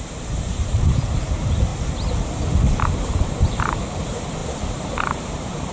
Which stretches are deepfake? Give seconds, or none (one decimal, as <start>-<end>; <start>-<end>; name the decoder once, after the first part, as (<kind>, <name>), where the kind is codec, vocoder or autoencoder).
0.0-1.7 (vocoder, BigVGAN v2); 2.9-5.7